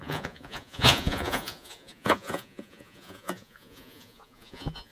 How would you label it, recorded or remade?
remade